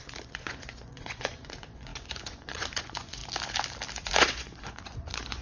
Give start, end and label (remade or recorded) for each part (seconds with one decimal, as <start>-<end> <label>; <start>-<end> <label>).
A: 0.0-3.2 remade; 3.2-3.9 recorded; 3.9-5.4 remade